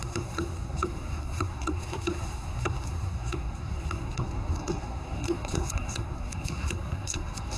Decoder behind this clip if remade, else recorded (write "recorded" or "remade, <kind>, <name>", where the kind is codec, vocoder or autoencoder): remade, codec, SNAC